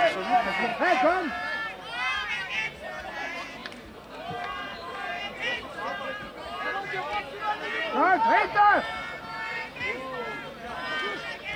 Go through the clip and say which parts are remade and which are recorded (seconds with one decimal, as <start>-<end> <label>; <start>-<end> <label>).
0.0-3.6 recorded; 3.6-7.2 remade; 7.2-11.6 recorded